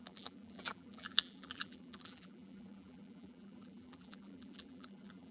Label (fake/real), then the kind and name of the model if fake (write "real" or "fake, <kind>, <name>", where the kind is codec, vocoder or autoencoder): fake, vocoder, BigVGAN v2